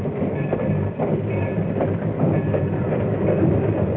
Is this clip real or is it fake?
real